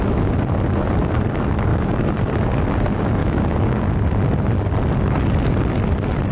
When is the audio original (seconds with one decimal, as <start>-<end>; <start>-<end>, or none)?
0.0-1.7; 2.4-3.2; 3.9-6.3